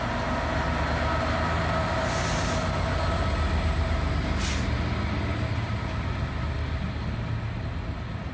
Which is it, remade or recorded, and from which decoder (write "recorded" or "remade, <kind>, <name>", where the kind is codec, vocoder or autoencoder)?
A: recorded